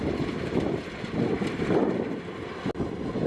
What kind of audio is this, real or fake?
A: real